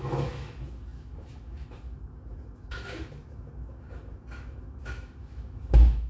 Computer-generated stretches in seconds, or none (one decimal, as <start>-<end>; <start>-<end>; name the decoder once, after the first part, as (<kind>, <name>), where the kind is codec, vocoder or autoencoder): 0.0-6.1 (autoencoder, DAC-VAE)